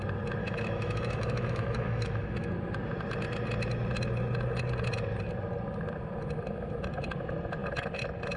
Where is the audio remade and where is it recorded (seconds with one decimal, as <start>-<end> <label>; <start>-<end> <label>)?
0.0-0.4 recorded; 0.4-2.5 remade; 2.5-8.4 recorded